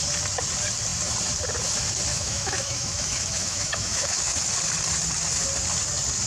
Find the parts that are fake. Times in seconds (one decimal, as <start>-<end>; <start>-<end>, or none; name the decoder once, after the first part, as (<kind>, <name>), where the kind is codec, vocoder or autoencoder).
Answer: 2.1-4.5 (autoencoder, DAC-VAE)